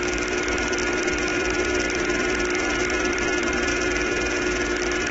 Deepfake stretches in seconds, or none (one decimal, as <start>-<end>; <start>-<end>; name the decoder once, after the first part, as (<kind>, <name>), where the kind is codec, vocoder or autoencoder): 0.0-3.7 (vocoder, BigVGAN v2)